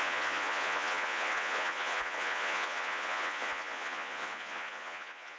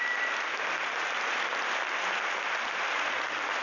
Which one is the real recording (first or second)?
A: second